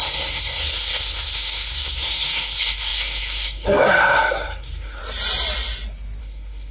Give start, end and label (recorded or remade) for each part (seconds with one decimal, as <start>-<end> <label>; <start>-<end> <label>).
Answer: 0.0-5.0 remade; 5.0-6.2 recorded; 6.2-6.7 remade